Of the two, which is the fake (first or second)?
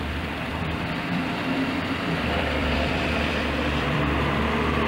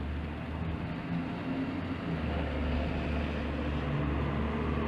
first